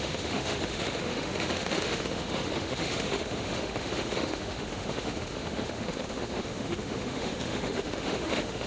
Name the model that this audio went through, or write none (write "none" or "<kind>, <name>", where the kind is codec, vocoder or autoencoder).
autoencoder, DAC-VAE